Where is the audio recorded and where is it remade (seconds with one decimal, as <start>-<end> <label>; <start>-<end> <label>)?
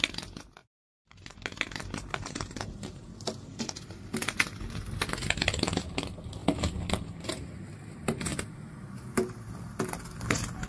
0.0-0.6 recorded; 0.6-3.0 remade; 3.0-10.7 recorded